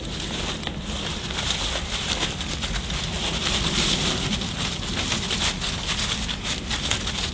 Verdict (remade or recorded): recorded